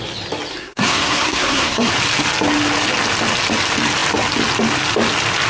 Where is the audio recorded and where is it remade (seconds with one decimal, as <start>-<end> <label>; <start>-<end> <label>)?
0.0-0.5 recorded; 0.5-1.9 remade; 1.9-5.5 recorded